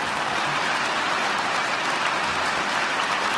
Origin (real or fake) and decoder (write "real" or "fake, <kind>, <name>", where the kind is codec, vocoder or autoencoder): real